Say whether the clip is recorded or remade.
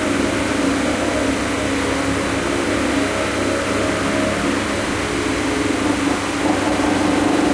recorded